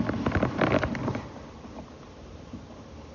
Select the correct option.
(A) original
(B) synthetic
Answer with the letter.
A